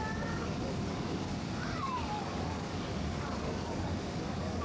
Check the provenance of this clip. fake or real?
fake